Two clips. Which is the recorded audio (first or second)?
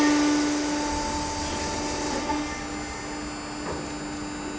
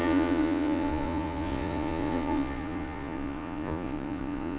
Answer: first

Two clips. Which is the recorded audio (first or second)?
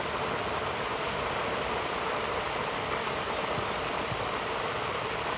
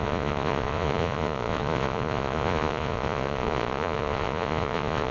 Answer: first